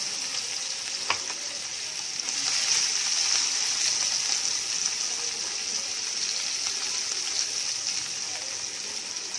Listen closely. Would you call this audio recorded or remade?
recorded